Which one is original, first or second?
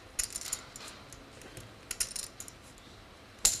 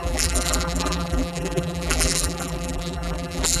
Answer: first